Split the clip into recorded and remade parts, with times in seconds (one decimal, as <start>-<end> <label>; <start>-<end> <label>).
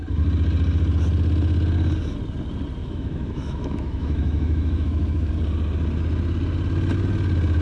0.0-2.8 recorded; 2.8-5.3 remade; 5.3-7.6 recorded